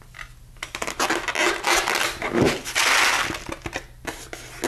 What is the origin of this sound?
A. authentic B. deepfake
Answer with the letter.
A